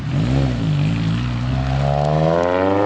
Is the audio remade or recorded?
recorded